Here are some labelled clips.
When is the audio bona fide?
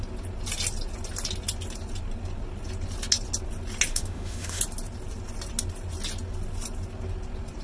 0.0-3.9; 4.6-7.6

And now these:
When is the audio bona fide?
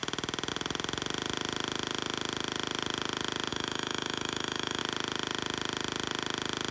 0.0-3.5; 4.8-6.7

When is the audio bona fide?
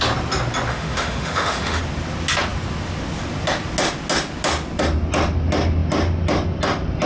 0.0-0.7; 1.8-7.1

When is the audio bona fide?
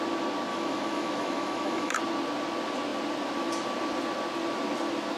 0.0-0.5; 2.0-5.2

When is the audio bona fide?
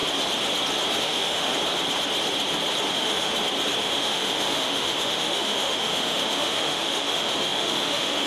0.0-1.0; 1.5-2.9; 3.3-3.8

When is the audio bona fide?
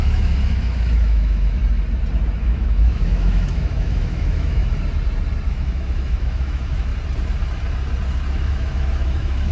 1.6-2.4; 4.6-5.5; 6.9-8.3